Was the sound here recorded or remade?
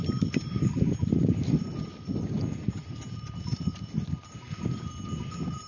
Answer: recorded